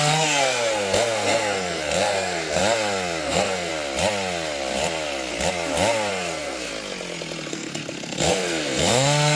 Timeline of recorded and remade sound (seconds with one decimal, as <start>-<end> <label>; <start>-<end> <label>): 0.0-2.6 remade; 2.6-3.2 recorded; 3.2-3.7 remade; 3.7-6.1 recorded; 6.1-6.7 remade; 6.7-7.5 recorded; 7.5-9.4 remade